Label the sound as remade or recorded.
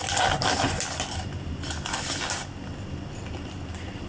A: recorded